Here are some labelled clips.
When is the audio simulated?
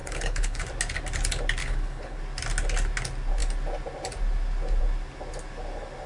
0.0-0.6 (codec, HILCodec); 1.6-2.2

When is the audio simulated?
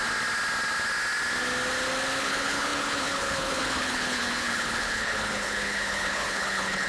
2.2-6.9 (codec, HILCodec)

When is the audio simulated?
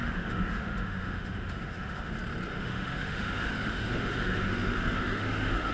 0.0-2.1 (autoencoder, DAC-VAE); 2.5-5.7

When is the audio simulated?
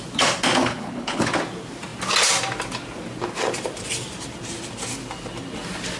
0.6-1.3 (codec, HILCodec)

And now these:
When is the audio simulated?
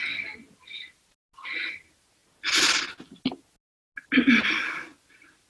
none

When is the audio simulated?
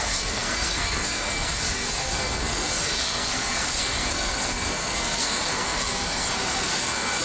0.0-7.2 (codec, SNAC)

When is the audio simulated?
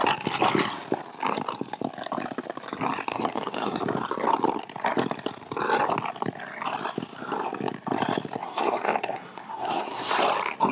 3.1-3.8 (codec, SNAC); 8.4-10.1